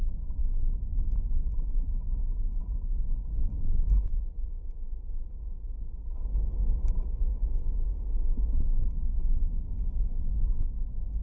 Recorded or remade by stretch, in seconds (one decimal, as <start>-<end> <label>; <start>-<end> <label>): 0.0-11.2 recorded